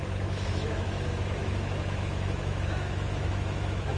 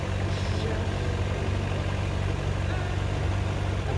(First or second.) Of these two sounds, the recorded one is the second